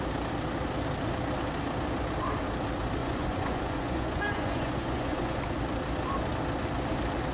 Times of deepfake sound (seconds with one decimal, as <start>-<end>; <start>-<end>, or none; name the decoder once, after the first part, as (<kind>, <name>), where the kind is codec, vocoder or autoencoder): 3.0-5.4 (vocoder, Vocos)